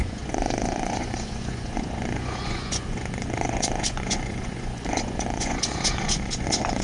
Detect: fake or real fake